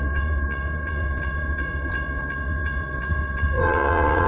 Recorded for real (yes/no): no